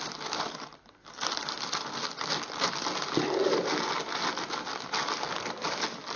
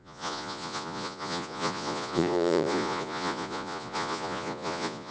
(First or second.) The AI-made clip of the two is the second